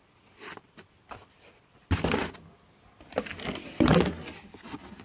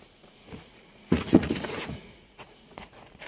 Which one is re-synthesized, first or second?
second